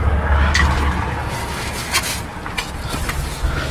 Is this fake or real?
real